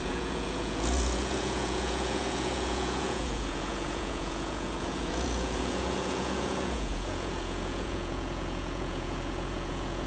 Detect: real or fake fake